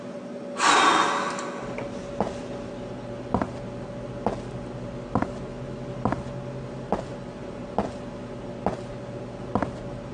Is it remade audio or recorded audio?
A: recorded